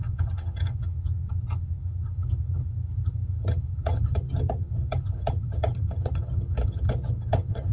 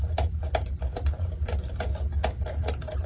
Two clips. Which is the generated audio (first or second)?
first